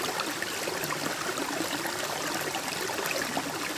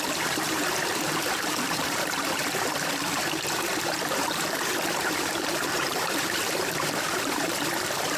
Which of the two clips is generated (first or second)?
second